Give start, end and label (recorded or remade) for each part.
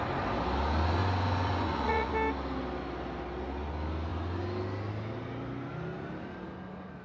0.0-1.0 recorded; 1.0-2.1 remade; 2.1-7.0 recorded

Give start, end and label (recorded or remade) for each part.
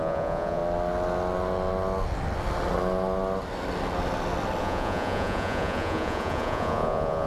0.0-0.6 remade; 0.6-4.6 recorded; 4.6-7.3 remade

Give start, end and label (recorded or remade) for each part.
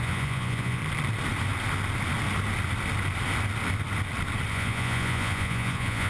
0.0-0.8 remade; 0.8-4.5 recorded; 4.5-6.1 remade